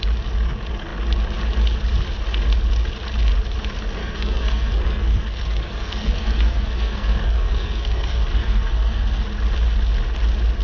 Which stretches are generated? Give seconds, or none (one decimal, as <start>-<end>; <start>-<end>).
4.0-9.2